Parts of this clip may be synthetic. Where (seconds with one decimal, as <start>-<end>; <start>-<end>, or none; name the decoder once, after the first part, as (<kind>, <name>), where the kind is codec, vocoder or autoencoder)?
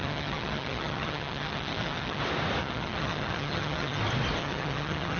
0.0-2.2 (vocoder, HiFi-GAN); 2.6-4.0; 4.4-5.2